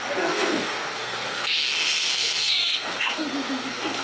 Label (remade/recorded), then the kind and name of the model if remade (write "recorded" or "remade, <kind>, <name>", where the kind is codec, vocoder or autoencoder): remade, codec, SNAC